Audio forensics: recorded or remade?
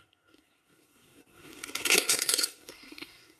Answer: remade